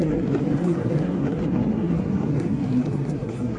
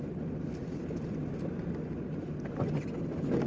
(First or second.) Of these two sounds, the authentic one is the second